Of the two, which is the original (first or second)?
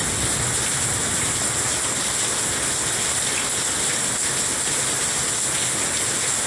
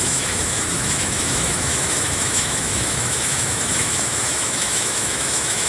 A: first